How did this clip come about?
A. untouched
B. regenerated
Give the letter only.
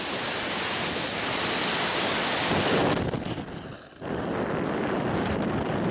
A